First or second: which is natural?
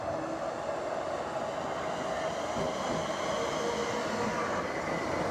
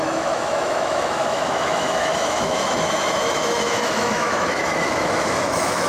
first